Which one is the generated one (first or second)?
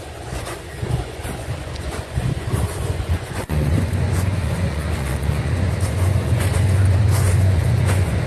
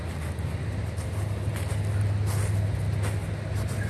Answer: first